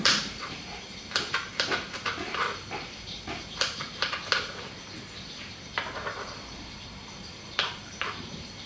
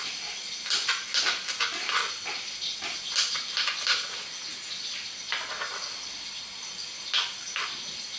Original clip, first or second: second